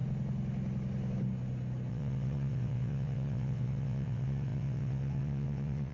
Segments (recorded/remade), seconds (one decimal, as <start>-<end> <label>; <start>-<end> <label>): 0.0-1.9 recorded; 1.9-5.9 remade